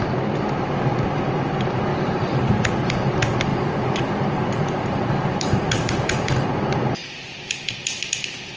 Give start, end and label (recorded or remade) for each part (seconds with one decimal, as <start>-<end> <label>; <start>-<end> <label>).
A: 0.0-1.9 recorded; 1.9-2.9 remade; 2.9-3.5 recorded; 3.5-6.5 remade; 6.5-8.6 recorded